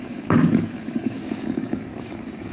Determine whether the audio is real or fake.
fake